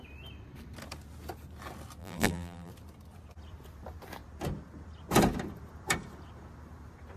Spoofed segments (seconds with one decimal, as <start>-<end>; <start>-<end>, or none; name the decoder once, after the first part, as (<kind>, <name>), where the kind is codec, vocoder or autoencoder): 2.0-2.7 (vocoder, BigVGAN v2)